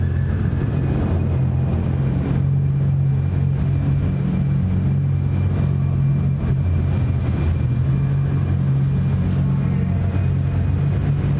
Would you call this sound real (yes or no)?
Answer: yes